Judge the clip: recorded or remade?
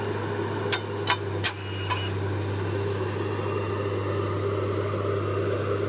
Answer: recorded